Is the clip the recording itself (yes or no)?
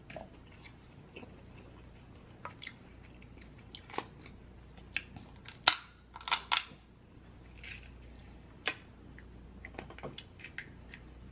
yes